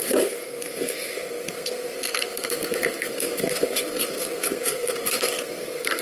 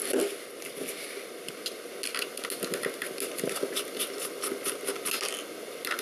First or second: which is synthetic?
first